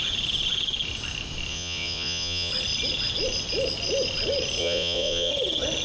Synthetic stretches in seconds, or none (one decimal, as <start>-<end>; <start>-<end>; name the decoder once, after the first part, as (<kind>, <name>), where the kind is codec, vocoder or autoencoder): 1.5-2.5 (vocoder, Vocos); 4.6-5.3